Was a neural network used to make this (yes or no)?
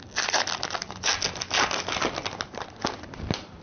no